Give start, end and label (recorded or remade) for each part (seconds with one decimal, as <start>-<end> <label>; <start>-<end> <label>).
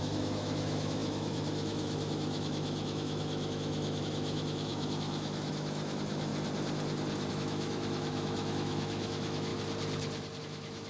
0.0-6.3 remade; 6.3-7.3 recorded; 7.3-9.5 remade; 9.5-10.4 recorded; 10.4-10.9 remade